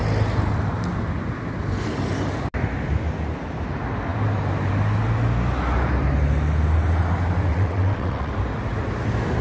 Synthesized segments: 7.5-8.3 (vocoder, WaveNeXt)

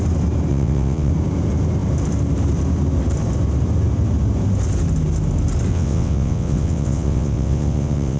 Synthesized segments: 0.5-1.1 (vocoder, WaveNeXt); 5.7-8.2